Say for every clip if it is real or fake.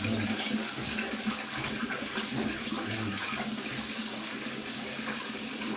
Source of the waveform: fake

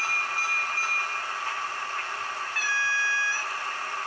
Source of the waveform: real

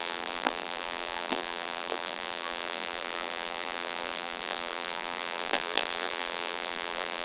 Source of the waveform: fake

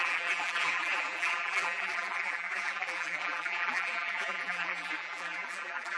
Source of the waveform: fake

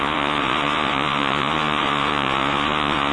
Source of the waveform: fake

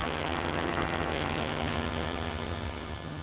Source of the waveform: fake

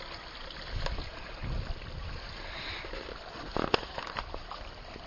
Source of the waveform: real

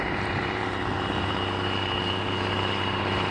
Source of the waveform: fake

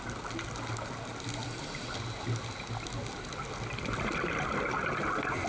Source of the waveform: real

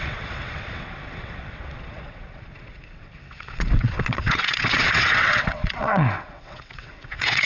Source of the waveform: fake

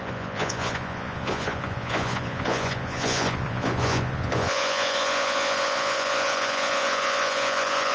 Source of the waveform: fake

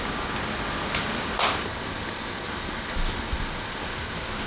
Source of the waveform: real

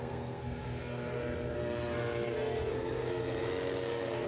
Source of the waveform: fake